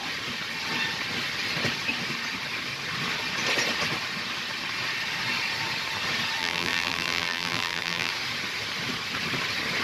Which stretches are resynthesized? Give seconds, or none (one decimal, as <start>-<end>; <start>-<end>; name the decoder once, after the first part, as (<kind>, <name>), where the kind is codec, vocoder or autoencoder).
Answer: 6.4-8.1 (vocoder, BigVGAN v2)